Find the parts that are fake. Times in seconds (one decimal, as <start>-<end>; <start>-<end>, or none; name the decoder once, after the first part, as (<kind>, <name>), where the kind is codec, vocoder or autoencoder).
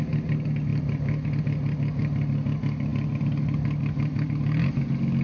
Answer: none